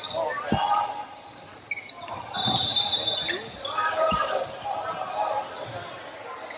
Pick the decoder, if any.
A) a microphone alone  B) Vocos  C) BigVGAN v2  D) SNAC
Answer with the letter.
A